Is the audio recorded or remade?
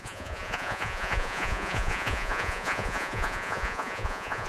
remade